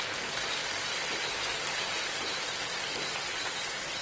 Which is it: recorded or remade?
recorded